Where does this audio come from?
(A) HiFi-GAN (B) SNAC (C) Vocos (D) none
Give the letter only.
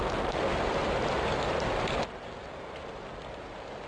D